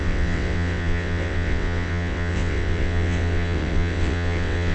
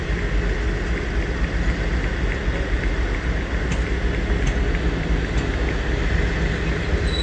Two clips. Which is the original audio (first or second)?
second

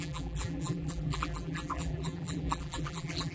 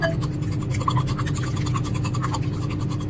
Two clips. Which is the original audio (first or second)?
second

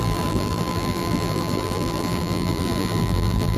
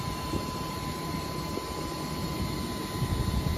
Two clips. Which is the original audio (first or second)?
second